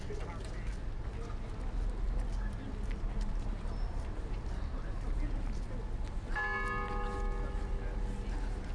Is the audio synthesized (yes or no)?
no